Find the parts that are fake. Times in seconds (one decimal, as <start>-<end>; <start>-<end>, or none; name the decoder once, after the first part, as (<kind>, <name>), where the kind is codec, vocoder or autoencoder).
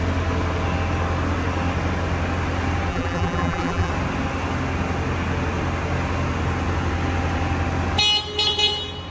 2.9-3.9 (vocoder, BigVGAN v2)